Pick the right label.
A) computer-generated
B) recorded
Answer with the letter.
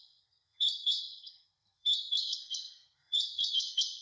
A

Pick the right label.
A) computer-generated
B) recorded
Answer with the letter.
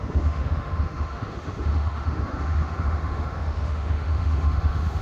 A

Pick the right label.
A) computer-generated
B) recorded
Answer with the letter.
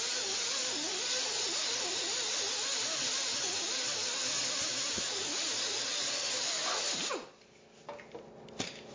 B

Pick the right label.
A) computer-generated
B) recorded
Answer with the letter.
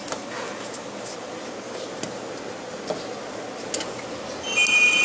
B